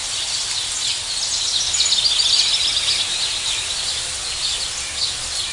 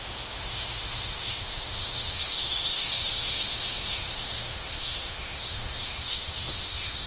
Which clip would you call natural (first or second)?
first